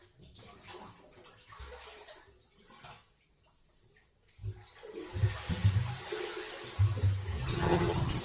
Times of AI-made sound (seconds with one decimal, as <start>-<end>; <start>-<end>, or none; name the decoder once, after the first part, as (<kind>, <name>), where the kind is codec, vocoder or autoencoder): 7.4-8.2 (vocoder, HiFi-GAN)